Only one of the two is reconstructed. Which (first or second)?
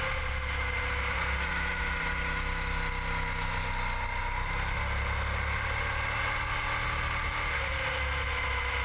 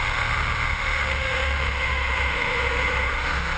second